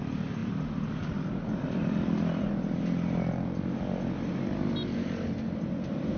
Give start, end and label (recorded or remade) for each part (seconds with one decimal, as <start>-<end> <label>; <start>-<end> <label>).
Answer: 0.0-0.4 recorded; 0.4-1.0 remade; 1.0-6.2 recorded